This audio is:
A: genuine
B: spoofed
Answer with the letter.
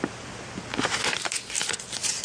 A